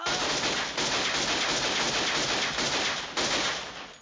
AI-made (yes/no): no